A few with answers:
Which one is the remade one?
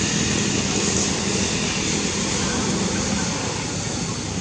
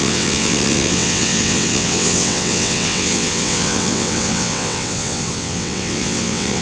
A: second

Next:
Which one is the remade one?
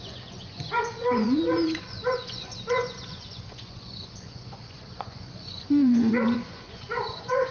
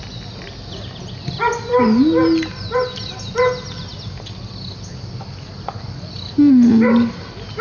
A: first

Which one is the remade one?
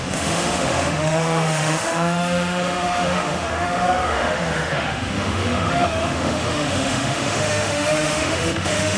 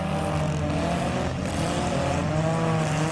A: first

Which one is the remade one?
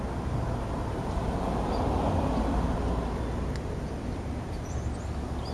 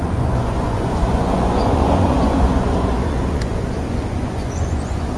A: second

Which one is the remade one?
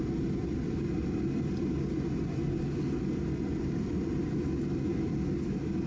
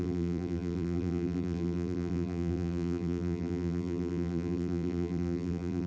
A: second